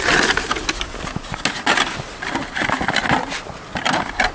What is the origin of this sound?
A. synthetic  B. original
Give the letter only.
B